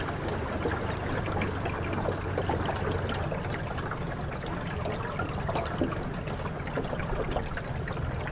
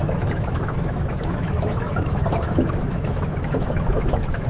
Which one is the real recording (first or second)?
first